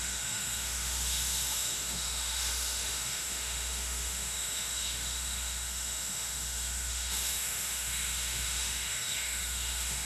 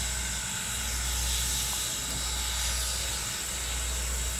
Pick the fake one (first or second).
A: first